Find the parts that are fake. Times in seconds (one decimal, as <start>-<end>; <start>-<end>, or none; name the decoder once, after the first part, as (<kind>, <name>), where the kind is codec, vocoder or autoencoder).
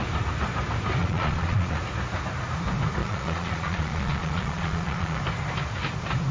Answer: 1.0-1.8 (vocoder, Vocos); 3.0-5.2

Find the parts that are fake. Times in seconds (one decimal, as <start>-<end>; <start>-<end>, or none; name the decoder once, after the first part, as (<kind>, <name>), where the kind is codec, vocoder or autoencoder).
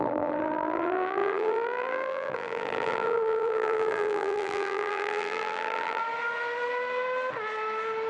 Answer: 0.0-6.0 (vocoder, BigVGAN v2)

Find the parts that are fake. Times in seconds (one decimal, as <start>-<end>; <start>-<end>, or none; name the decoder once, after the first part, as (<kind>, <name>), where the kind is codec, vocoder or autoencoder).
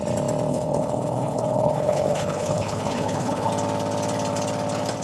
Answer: 0.5-3.5 (codec, HILCodec)